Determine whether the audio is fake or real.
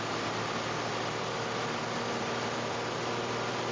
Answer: real